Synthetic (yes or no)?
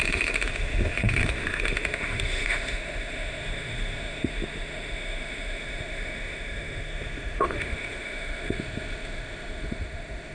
yes